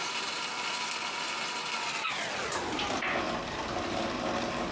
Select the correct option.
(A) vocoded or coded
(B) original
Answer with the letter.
A